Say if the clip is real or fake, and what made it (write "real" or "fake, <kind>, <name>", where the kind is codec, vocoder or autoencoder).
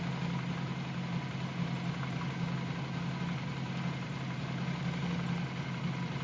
real